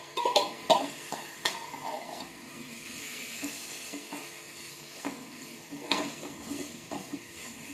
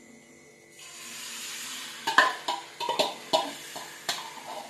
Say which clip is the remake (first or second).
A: first